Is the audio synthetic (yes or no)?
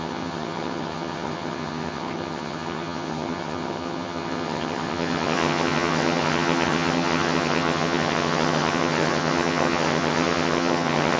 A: yes